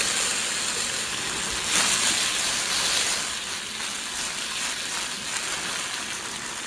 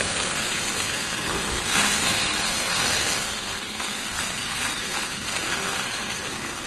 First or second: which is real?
first